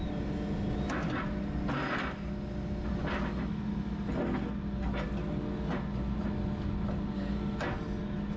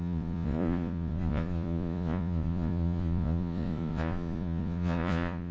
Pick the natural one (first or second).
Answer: first